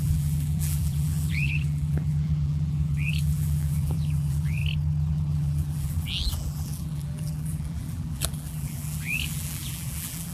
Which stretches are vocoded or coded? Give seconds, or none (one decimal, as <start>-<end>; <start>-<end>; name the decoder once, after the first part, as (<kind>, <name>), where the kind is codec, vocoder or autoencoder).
0.0-4.6 (vocoder, BigVGAN v2); 5.1-10.3

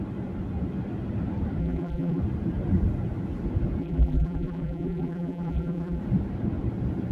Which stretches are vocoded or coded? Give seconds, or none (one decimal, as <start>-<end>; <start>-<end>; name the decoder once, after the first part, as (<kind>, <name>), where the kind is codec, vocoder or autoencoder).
1.6-2.2 (vocoder, BigVGAN v2); 3.8-6.0

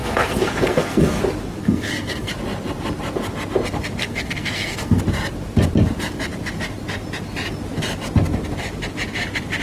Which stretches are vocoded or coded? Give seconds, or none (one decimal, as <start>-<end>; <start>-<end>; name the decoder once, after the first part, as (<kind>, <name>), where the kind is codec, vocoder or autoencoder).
0.0-1.2 (codec, SNAC); 1.6-2.3; 4.0-5.0